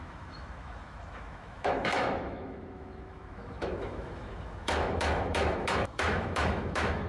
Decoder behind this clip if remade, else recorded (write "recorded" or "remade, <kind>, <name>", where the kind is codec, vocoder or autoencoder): remade, autoencoder, DAC-VAE